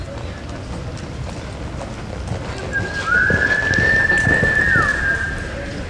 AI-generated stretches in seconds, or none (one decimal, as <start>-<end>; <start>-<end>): 4.9-5.9